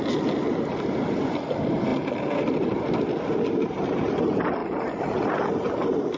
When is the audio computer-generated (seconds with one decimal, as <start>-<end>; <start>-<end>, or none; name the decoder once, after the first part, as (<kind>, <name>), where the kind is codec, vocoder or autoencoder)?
1.9-2.9 (vocoder, BigVGAN v2); 4.6-5.3